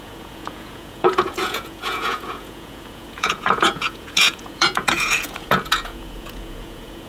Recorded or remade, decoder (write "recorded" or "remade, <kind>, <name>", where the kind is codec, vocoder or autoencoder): remade, vocoder, Vocos